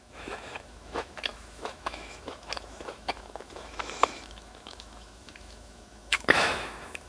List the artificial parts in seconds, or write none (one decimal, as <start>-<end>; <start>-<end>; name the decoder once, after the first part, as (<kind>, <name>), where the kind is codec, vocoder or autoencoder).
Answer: 0.0-7.1 (autoencoder, DAC-VAE)